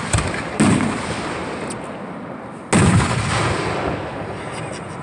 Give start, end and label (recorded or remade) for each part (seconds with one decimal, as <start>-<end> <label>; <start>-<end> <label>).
0.0-5.0 recorded